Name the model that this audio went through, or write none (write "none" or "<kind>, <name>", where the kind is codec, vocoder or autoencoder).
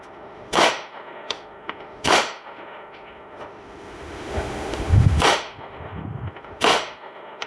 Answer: autoencoder, DAC-VAE